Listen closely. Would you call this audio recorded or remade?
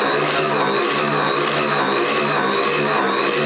recorded